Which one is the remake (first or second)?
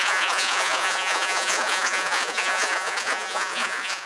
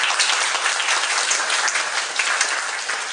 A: first